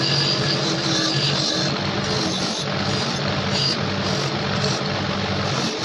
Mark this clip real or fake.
real